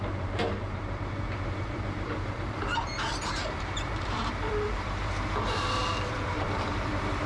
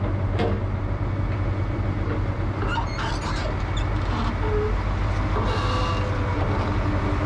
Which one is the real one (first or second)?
second